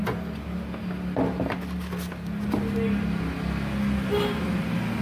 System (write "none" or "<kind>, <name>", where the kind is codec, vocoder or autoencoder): none